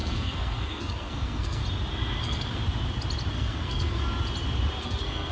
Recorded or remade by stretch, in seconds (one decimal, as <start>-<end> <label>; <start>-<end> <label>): 0.0-1.6 remade; 1.6-2.2 recorded; 2.2-2.6 remade; 2.6-3.3 recorded; 3.3-4.0 remade; 4.0-4.8 recorded; 4.8-5.3 remade

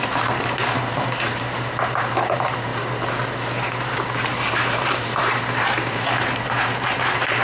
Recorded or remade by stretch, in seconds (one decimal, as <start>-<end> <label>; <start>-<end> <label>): 0.0-2.7 remade; 2.7-3.8 recorded; 3.8-7.4 remade

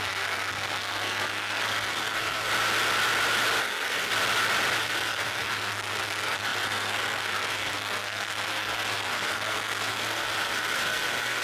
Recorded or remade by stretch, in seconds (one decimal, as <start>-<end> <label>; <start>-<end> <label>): 0.0-2.5 remade; 2.5-3.6 recorded; 3.6-4.1 remade; 4.1-4.8 recorded; 4.8-11.4 remade

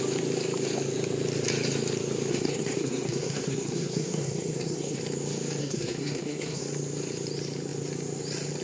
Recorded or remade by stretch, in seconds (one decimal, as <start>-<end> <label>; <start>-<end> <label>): 0.0-2.3 recorded; 2.3-5.0 remade; 5.0-5.6 recorded; 5.6-6.6 remade; 6.6-8.6 recorded